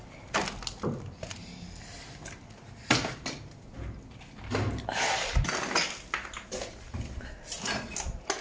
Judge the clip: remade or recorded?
recorded